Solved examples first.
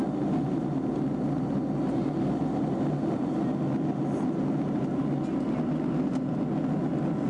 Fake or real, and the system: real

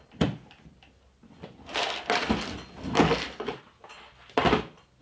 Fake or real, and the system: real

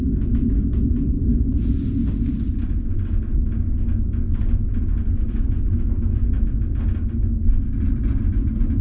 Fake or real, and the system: real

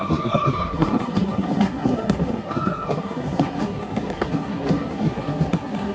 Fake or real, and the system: fake, codec, SNAC